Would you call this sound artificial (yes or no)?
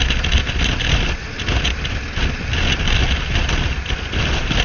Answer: no